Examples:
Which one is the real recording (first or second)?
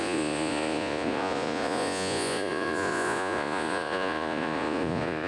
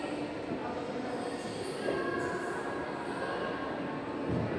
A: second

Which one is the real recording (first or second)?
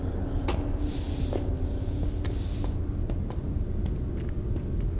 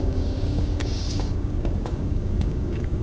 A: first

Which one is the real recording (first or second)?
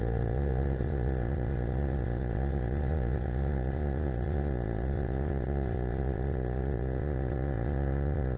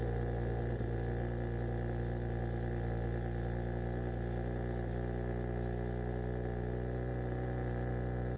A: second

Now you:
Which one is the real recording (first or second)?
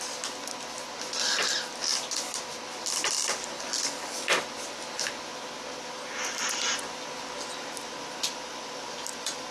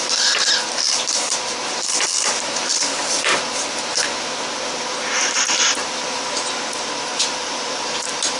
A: first